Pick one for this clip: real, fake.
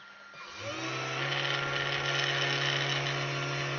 real